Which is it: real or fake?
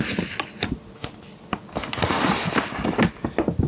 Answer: real